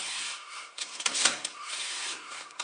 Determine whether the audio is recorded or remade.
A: remade